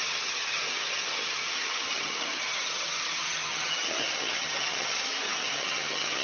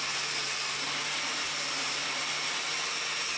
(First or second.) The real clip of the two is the second